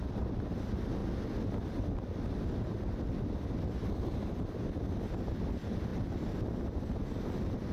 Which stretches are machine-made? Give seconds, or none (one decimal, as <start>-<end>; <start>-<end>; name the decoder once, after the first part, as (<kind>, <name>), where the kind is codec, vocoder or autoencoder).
none